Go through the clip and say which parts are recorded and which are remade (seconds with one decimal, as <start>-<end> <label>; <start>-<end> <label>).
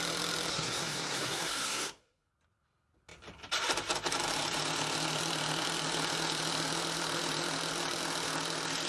0.0-0.5 recorded; 0.5-2.3 remade; 2.3-8.9 recorded